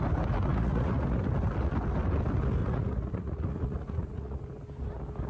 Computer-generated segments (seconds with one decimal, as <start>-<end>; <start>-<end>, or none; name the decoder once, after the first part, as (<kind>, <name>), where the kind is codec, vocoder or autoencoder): 0.5-1.2 (vocoder, Vocos); 2.6-4.4